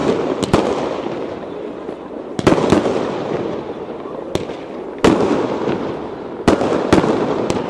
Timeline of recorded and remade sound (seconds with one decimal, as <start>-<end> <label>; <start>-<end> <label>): 0.0-7.7 recorded